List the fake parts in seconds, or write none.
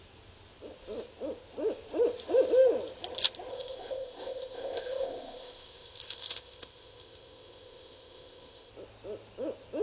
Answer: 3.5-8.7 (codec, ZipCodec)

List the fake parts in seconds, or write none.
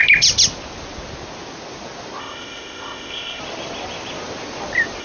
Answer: 2.2-3.4 (codec, ZipCodec)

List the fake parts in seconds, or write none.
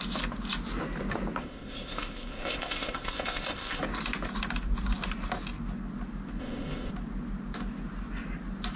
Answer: 1.4-3.8 (codec, ZipCodec); 6.4-6.9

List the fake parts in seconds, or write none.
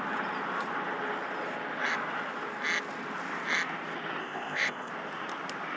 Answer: 4.2-4.9 (codec, ZipCodec)